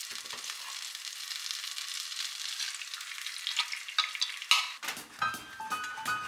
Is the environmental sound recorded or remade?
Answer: recorded